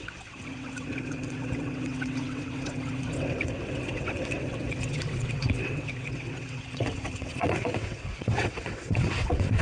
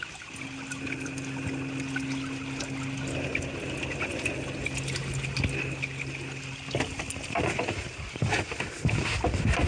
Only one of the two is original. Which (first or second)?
second